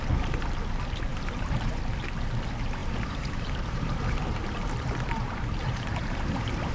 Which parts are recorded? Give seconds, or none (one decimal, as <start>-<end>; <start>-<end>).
0.0-1.1; 1.8-2.8